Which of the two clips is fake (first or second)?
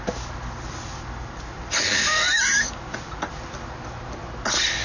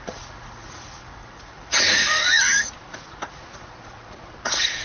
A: second